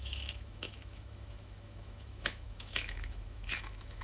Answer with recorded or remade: remade